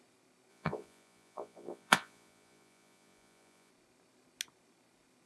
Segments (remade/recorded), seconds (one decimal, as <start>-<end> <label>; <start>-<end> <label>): 0.0-0.5 recorded; 0.5-3.7 remade; 3.7-5.3 recorded